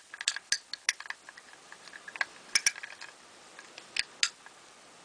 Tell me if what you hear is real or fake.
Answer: real